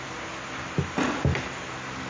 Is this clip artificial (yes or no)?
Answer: no